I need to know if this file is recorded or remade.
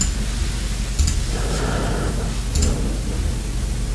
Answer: recorded